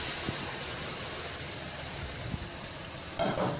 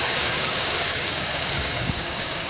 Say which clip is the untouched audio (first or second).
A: first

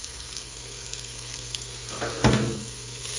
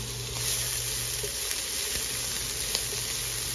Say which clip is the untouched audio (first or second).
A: second